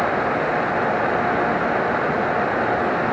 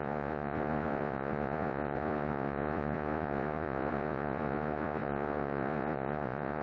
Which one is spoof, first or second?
second